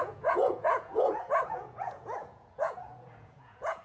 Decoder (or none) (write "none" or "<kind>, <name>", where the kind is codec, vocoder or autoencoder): vocoder, Vocos